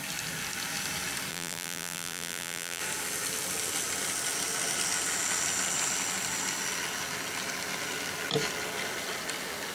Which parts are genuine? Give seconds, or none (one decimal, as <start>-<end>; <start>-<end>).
0.0-1.3; 2.8-9.7

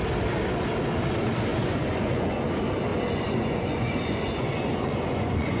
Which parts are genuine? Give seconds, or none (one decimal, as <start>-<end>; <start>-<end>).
0.0-1.5; 2.5-2.9

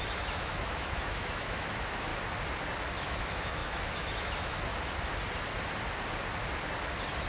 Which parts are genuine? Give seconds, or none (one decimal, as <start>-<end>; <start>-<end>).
2.1-3.0; 4.7-7.3

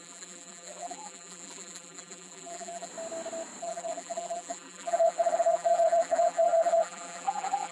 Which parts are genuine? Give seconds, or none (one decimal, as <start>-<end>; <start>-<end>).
2.9-3.6

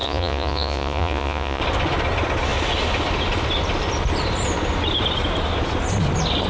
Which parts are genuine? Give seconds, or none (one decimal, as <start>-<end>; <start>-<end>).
1.6-6.5

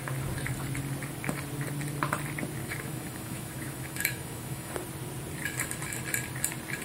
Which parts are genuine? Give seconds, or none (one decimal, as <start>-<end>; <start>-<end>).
0.0-2.6; 4.7-6.8